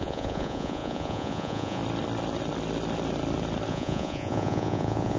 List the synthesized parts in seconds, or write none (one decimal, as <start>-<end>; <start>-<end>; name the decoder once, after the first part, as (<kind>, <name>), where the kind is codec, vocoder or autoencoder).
0.0-1.8 (vocoder, Vocos); 3.7-5.2